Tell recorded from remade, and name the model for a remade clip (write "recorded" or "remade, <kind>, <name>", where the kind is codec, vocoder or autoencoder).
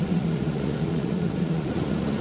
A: remade, vocoder, Vocos